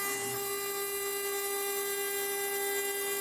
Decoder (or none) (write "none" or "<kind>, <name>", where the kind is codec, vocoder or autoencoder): none